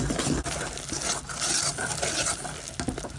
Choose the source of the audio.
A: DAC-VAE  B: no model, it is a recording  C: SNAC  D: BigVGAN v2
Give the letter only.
B